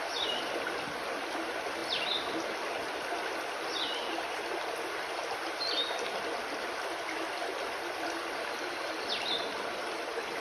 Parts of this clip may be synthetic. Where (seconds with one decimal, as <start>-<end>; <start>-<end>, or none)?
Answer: none